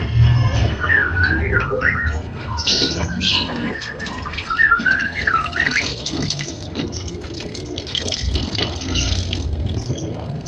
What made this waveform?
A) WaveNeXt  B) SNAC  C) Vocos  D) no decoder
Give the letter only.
B